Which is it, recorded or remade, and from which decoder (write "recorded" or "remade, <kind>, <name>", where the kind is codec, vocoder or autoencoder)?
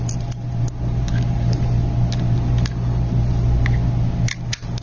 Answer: recorded